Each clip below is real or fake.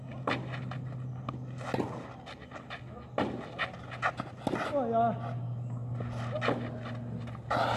real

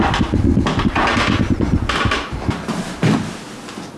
real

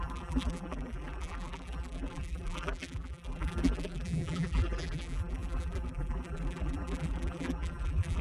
fake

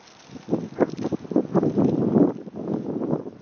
real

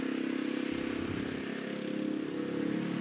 real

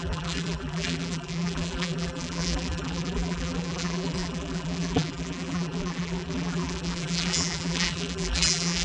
fake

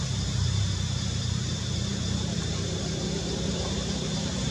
fake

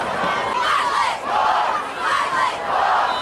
real